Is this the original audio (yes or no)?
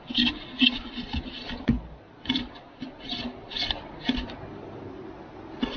yes